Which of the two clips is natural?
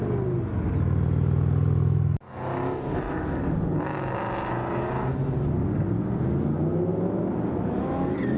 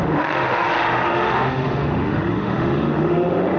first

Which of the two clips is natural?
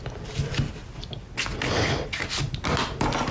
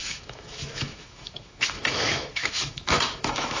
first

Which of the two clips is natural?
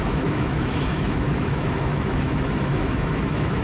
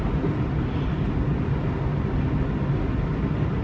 second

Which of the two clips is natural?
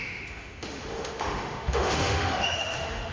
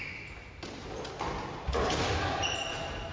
second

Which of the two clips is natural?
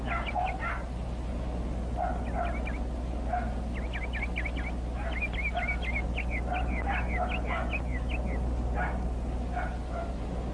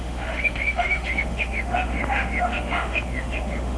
first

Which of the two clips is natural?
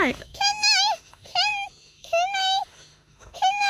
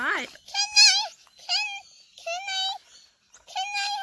second